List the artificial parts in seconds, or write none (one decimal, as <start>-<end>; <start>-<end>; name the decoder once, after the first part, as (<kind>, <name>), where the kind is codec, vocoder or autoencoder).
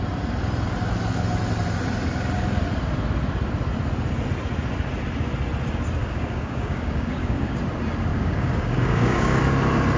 6.0-7.6 (codec, DAC); 8.1-9.4